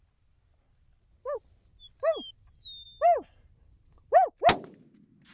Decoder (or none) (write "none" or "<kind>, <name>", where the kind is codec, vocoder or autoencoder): none